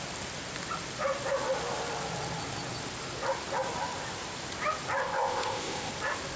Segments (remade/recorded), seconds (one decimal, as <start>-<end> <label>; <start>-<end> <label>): 0.0-5.0 recorded; 5.0-5.9 remade; 5.9-6.4 recorded